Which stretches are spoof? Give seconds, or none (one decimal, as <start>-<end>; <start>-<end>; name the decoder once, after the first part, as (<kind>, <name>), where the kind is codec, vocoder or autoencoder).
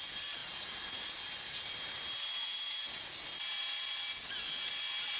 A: none